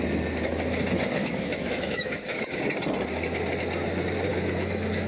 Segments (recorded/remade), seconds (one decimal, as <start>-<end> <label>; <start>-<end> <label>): 0.0-1.2 recorded; 1.2-2.6 remade; 2.6-4.3 recorded; 4.3-5.1 remade